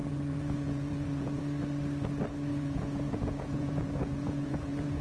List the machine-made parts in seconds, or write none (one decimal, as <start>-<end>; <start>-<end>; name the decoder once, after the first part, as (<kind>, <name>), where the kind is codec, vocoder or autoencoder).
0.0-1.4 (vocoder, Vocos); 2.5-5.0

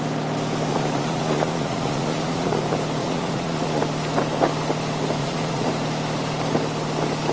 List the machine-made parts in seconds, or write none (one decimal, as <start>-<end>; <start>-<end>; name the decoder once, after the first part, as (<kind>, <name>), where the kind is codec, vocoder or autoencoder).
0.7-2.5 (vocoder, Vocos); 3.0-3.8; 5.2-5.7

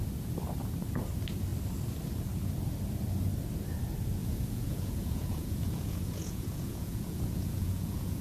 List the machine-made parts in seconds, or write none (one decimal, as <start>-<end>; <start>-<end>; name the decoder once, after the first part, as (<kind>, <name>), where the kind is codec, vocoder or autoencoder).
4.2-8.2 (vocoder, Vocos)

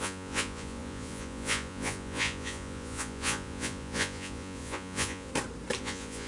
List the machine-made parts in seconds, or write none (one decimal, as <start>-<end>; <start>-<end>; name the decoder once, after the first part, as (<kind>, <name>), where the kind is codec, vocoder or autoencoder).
0.0-5.3 (vocoder, Vocos); 5.8-6.3

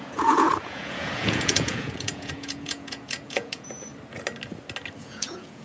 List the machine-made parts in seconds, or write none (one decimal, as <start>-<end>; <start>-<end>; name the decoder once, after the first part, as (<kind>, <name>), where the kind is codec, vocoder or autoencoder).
0.0-3.9 (vocoder, Vocos); 5.0-5.6

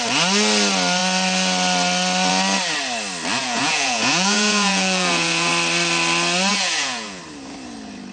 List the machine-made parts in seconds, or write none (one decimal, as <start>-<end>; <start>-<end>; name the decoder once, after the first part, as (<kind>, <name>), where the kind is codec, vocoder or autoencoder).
3.4-5.5 (vocoder, Vocos); 6.5-7.2

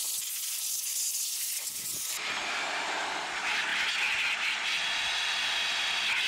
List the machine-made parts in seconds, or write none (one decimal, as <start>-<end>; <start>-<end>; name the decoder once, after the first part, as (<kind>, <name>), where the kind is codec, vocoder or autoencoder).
none

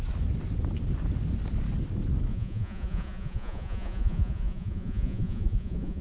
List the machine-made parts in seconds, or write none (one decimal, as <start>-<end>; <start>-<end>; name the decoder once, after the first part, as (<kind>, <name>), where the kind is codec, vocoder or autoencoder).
2.3-6.0 (vocoder, Vocos)